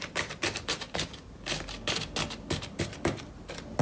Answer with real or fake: real